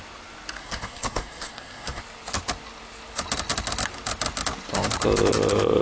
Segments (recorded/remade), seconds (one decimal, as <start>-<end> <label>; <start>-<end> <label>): 0.0-0.6 recorded; 0.6-2.0 remade; 2.0-5.8 recorded